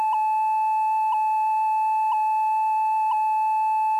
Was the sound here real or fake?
real